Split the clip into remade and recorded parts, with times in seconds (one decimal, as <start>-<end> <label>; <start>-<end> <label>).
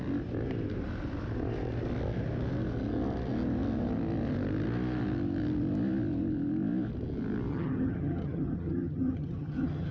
0.0-7.5 recorded; 7.5-9.9 remade